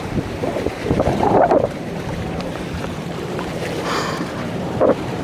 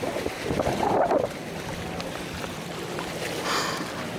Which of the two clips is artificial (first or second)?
first